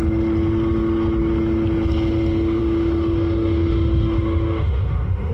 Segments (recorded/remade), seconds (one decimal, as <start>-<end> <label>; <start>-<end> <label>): 0.0-2.6 recorded; 2.6-5.3 remade